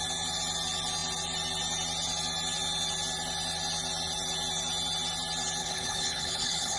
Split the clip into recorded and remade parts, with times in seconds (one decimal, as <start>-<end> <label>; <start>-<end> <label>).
0.0-5.6 recorded; 5.6-6.8 remade